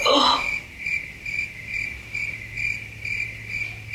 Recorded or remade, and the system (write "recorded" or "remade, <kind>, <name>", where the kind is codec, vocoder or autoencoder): recorded